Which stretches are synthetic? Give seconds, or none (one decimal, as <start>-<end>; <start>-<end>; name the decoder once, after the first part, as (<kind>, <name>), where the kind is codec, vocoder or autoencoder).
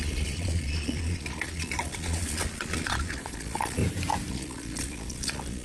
0.0-3.8 (vocoder, Vocos); 4.3-5.6